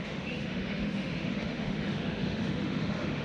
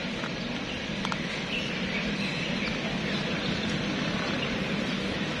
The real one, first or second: second